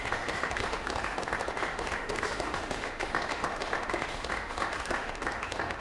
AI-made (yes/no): yes